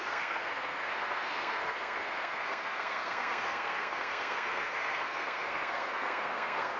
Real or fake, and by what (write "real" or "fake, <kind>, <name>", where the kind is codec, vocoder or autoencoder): fake, codec, SNAC